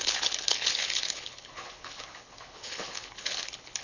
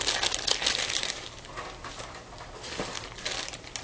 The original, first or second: second